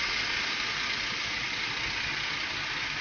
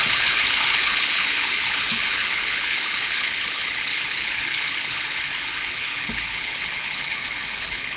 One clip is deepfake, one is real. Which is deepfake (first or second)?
second